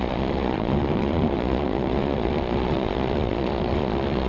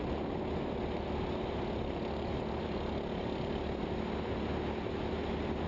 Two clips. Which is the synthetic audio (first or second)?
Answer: first